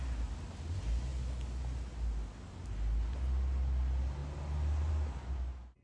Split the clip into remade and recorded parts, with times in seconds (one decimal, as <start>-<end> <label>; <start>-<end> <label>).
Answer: 0.0-5.8 recorded

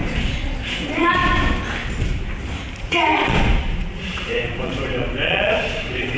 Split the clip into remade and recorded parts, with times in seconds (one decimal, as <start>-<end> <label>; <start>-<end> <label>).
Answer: 0.0-1.2 remade; 1.2-2.8 recorded; 2.8-6.2 remade

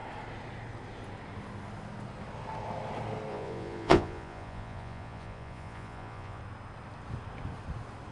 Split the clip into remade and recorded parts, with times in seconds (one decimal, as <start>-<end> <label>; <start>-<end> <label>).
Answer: 0.0-3.3 recorded; 3.3-6.4 remade; 6.4-8.1 recorded

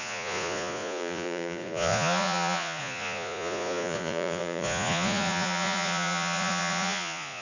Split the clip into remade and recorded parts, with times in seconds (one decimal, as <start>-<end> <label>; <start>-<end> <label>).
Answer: 0.0-7.4 remade

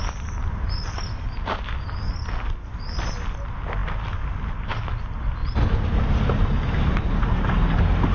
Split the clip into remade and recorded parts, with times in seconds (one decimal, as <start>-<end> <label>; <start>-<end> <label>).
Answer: 0.0-5.4 recorded; 5.4-7.5 remade; 7.5-8.1 recorded